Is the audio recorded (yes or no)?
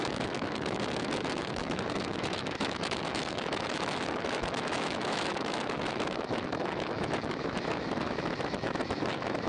no